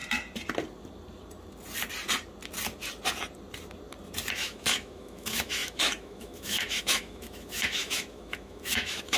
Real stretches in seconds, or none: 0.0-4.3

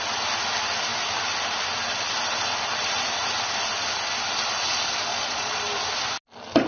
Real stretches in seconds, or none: 0.0-5.1; 5.6-6.7